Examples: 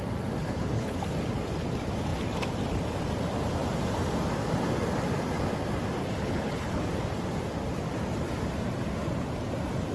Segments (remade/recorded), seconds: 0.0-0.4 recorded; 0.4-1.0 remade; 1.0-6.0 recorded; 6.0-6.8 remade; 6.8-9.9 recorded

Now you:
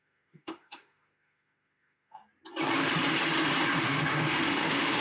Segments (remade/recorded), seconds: 0.0-2.2 remade; 2.2-3.8 recorded; 3.8-5.0 remade

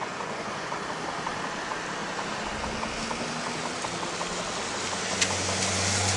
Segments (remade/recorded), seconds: 0.0-0.7 remade; 0.7-6.2 recorded

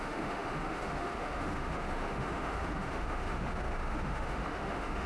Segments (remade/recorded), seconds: 0.0-5.1 remade

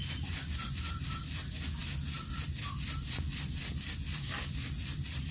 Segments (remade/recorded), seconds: 0.0-5.3 recorded